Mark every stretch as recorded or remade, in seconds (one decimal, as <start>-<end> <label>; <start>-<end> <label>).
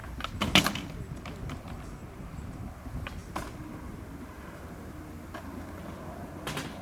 0.0-2.0 recorded; 2.0-2.7 remade; 2.7-6.8 recorded